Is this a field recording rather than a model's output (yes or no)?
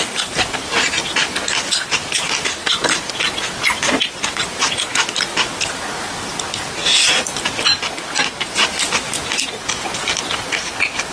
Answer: yes